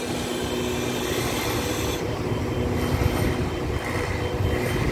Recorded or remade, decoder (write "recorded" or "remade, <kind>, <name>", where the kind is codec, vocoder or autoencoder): recorded